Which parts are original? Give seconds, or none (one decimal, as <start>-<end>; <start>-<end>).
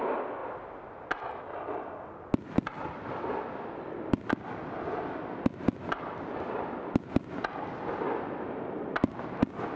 0.0-9.8